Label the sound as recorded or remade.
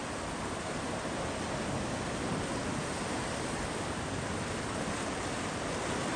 recorded